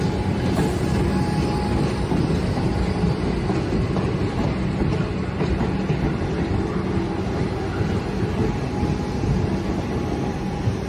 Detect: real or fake real